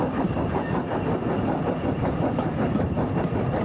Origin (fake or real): real